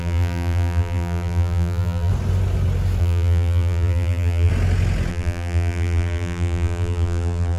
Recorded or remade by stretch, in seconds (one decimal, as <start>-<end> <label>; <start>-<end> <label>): 0.0-2.1 remade; 2.1-3.0 recorded; 3.0-4.5 remade; 4.5-5.1 recorded; 5.1-7.6 remade